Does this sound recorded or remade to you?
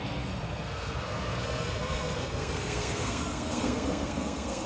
remade